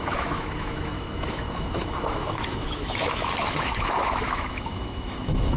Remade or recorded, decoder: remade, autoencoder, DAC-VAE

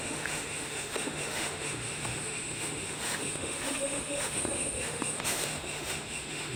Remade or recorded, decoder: remade, autoencoder, DAC-VAE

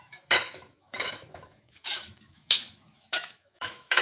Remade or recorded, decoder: remade, autoencoder, DAC-VAE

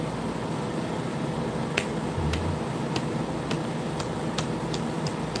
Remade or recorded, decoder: recorded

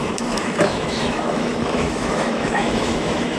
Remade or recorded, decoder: remade, autoencoder, DAC-VAE